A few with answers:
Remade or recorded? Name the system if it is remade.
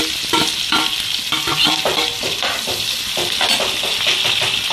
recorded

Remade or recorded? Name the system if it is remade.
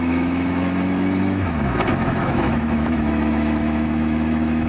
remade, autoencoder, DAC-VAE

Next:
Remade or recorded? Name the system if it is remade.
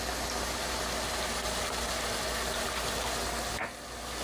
recorded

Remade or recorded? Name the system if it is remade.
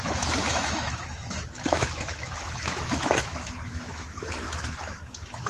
remade, autoencoder, DAC-VAE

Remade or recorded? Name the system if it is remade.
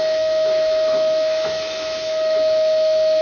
remade, autoencoder, DAC-VAE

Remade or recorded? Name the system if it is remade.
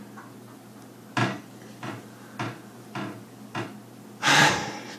recorded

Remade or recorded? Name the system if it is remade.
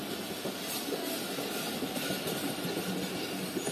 recorded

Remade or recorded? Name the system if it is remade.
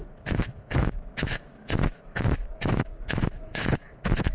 remade, autoencoder, DAC-VAE